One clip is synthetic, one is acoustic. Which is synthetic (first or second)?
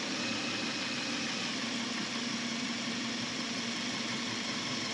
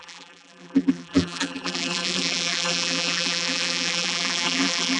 second